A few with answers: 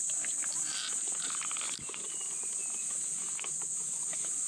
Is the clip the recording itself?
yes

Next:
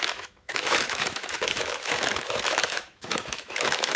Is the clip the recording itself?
no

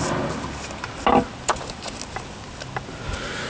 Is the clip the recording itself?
yes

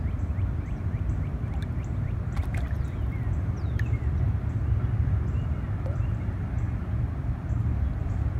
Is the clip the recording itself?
yes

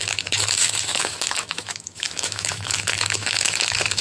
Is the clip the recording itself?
no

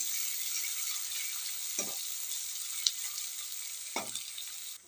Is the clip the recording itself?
yes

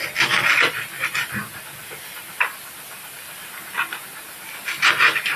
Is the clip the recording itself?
yes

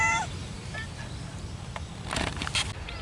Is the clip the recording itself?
yes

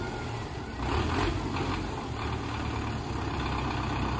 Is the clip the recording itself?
yes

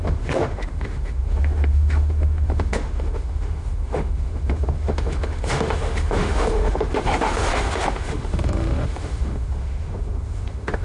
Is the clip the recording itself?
no